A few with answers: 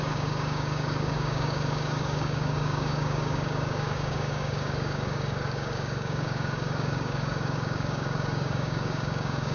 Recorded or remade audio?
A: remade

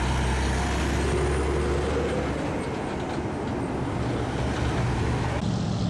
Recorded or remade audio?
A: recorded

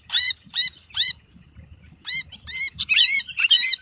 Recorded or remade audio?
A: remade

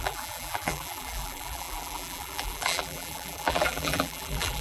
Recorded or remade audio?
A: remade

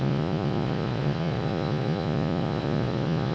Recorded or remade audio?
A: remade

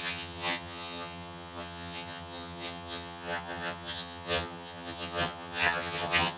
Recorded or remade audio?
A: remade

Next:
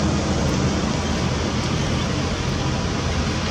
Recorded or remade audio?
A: recorded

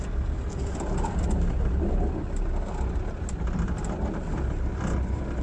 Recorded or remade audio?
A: recorded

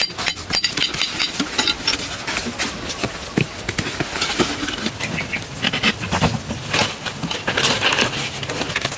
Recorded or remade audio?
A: recorded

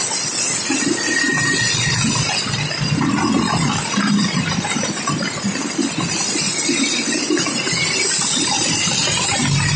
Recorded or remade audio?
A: recorded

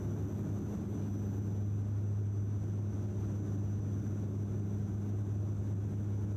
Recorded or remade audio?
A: recorded